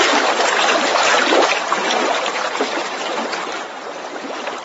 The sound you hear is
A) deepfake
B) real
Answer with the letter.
A